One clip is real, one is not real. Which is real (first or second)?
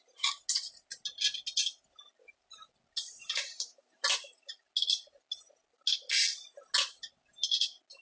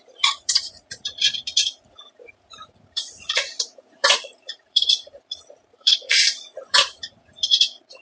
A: first